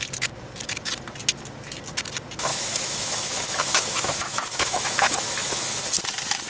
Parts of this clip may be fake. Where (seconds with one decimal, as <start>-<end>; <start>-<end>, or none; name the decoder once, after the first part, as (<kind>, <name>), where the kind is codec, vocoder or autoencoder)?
2.5-5.7 (autoencoder, DAC-VAE)